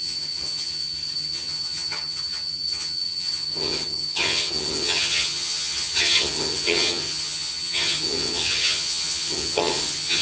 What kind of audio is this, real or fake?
fake